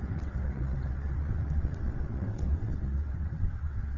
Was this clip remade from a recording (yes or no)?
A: yes